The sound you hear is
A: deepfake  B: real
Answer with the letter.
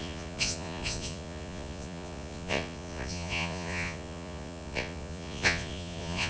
A